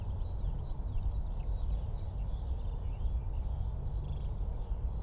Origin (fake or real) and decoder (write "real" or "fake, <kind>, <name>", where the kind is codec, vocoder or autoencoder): real